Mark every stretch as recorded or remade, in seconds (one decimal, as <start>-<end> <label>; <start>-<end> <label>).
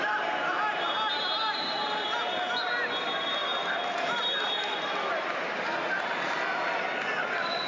0.0-7.7 recorded